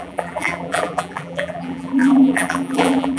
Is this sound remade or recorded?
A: remade